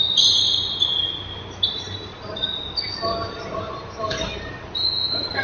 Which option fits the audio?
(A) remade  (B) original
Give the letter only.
B